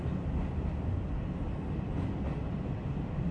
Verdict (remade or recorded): recorded